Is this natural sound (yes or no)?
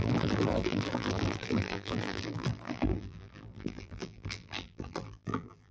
no